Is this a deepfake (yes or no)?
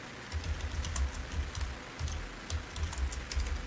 no